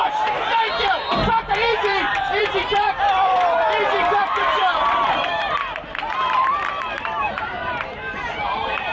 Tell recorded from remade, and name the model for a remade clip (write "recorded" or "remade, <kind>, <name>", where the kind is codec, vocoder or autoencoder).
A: remade, vocoder, BigVGAN v2